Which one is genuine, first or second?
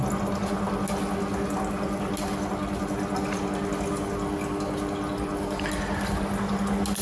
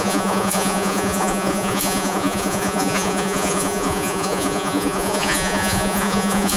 first